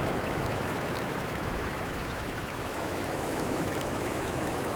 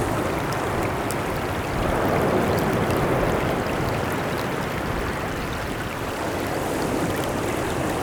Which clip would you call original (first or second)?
second